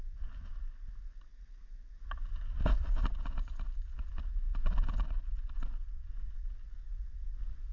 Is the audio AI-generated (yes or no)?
no